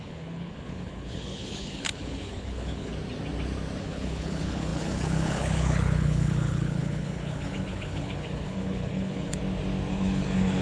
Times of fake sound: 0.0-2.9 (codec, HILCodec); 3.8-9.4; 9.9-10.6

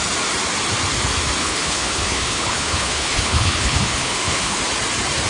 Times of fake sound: 1.4-4.6 (codec, HILCodec)

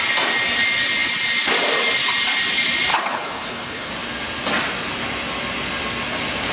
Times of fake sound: 2.9-3.9 (codec, HILCodec)

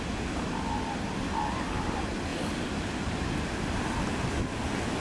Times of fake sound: none